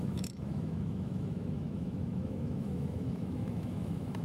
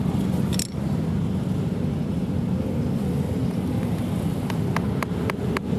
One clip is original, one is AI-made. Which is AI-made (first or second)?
first